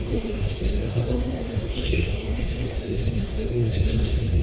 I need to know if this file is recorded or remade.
remade